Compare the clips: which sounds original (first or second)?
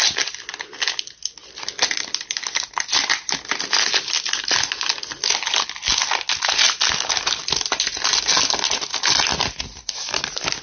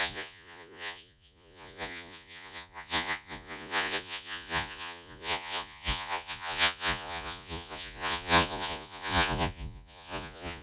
first